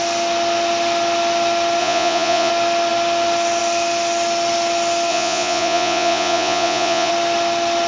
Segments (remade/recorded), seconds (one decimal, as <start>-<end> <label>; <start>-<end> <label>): 0.0-1.8 recorded; 1.8-2.5 remade; 2.5-5.1 recorded; 5.1-7.1 remade; 7.1-7.9 recorded

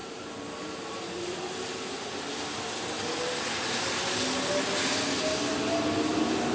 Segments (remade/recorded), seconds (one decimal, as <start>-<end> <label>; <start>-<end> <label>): 0.0-1.4 remade; 1.4-6.5 recorded